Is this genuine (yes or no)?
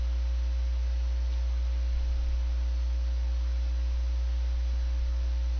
yes